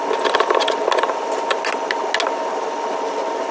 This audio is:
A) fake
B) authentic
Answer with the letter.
B